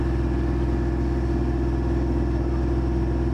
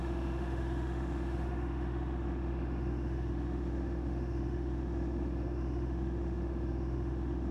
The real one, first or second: first